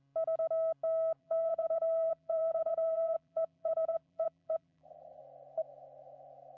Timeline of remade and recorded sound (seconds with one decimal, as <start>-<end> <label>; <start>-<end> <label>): 0.0-1.2 recorded; 1.2-5.2 remade; 5.2-6.6 recorded